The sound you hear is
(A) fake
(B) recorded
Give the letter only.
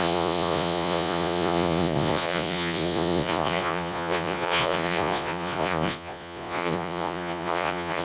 A